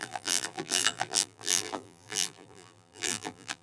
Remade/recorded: remade